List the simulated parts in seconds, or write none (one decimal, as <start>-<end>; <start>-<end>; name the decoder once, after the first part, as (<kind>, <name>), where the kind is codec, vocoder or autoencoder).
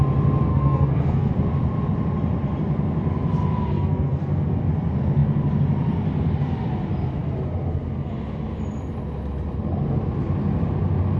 0.5-1.3 (codec, SNAC); 3.7-4.6